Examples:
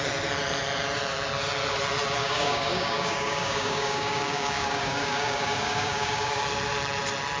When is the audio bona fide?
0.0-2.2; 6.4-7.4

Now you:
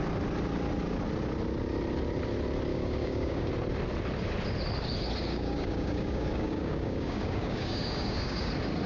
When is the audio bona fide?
0.0-2.7; 3.5-5.3; 8.5-8.9